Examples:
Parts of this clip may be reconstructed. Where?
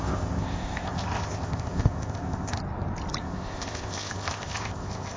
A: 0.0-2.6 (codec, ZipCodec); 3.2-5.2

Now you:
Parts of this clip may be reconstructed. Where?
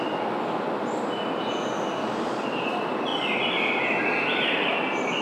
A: none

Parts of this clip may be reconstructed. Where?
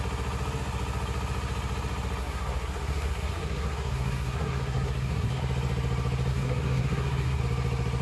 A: 2.2-5.4 (codec, SNAC); 6.3-7.4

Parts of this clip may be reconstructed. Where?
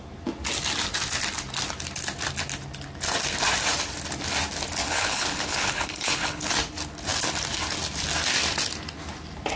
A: 4.8-6.5 (codec, HILCodec)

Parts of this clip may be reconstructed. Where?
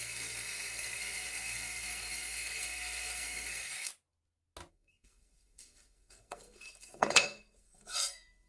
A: 0.0-3.9 (codec, SNAC); 4.7-8.5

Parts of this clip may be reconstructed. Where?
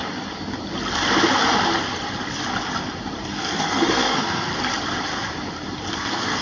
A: 3.3-4.5 (codec, SNAC); 5.9-6.4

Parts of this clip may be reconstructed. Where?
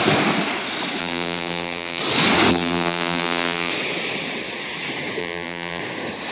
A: 1.0-2.0 (vocoder, BigVGAN v2); 2.5-3.7; 5.2-5.8